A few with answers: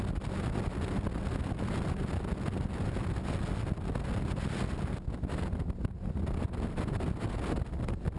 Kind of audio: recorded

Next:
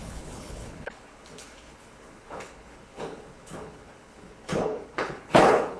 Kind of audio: remade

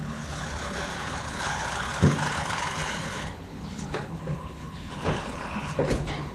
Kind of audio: remade